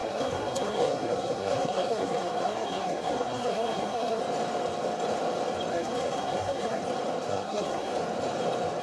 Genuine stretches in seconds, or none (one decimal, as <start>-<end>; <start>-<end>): 4.2-5.7; 6.8-7.3; 7.9-8.8